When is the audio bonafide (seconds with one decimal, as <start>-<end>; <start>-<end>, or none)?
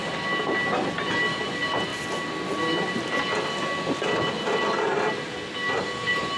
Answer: 0.0-6.4